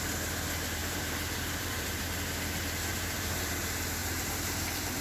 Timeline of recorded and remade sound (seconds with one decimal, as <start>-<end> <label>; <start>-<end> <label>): 0.0-0.8 recorded; 0.8-2.0 remade; 2.0-2.9 recorded; 2.9-3.5 remade; 3.5-4.0 recorded; 4.0-5.0 remade